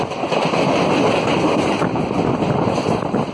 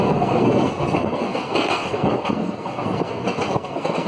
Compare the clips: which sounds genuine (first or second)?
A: first